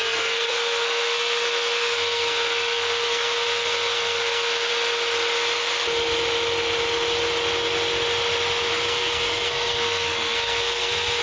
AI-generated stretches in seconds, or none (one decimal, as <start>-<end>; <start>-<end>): 0.0-4.7; 8.7-11.2